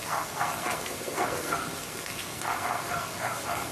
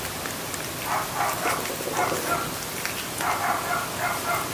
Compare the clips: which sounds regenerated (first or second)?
first